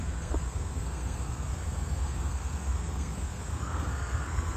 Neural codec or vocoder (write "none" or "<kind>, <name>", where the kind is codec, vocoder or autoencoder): codec, SNAC